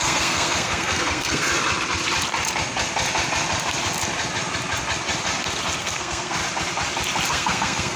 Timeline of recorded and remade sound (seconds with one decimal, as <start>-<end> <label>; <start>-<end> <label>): 0.0-1.5 remade; 1.5-5.8 recorded; 5.8-6.4 remade; 6.4-7.3 recorded; 7.3-8.0 remade